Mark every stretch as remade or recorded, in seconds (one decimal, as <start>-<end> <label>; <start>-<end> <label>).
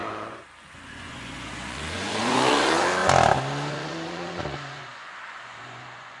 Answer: 0.0-3.0 remade; 3.0-3.7 recorded; 3.7-6.2 remade